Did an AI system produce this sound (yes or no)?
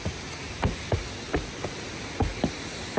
no